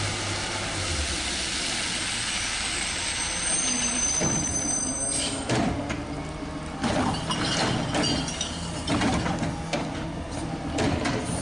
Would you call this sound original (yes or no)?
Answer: yes